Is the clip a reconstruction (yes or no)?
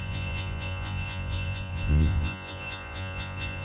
yes